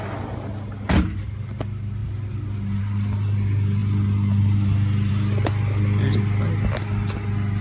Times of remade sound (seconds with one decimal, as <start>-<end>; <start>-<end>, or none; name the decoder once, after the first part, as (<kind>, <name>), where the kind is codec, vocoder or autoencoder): none